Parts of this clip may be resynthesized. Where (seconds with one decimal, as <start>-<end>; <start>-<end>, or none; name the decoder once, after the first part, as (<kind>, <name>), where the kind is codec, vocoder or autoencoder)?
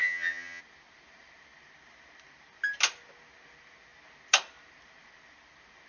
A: 0.0-0.6 (vocoder, HiFi-GAN)